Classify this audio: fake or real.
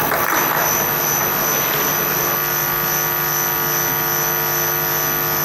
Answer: real